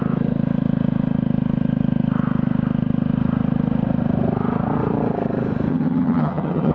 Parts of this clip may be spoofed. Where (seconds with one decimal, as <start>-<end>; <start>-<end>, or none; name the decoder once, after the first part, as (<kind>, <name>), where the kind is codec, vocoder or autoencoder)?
5.7-6.7 (vocoder, HiFi-GAN)

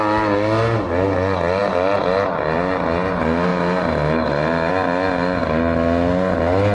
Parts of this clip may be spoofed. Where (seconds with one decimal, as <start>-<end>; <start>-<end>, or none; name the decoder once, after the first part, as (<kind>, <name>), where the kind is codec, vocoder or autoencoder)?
none

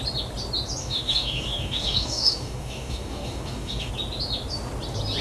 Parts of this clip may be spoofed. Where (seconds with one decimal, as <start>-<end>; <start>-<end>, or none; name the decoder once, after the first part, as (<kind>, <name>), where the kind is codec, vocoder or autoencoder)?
0.8-3.9 (codec, DAC)

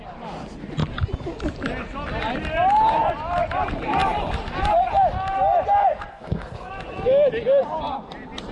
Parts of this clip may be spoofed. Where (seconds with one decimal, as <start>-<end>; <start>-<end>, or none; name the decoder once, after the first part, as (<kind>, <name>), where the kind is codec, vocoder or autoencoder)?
6.1-6.7 (codec, SNAC)

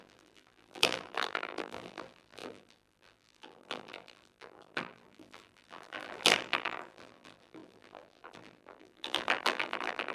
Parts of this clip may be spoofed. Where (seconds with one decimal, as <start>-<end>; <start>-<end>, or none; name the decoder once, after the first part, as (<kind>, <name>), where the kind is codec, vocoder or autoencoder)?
0.0-10.1 (vocoder, BigVGAN v2)

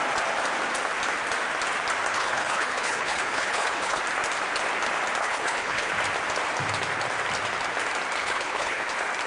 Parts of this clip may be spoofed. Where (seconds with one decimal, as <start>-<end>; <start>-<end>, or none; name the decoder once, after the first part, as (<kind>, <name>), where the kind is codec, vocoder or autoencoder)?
2.1-4.0 (codec, HILCodec); 5.2-5.9; 8.2-8.9

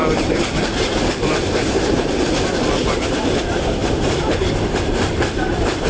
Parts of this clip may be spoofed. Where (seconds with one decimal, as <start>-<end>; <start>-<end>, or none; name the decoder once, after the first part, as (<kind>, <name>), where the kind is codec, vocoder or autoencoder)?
0.0-5.9 (vocoder, BigVGAN v2)

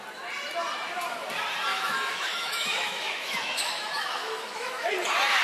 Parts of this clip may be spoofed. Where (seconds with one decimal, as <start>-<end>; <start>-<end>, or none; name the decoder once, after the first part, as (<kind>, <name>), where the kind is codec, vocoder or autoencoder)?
1.7-4.9 (autoencoder, DAC-VAE)